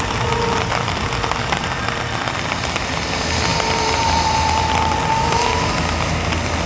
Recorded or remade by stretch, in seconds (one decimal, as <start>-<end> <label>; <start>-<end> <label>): 0.0-6.7 recorded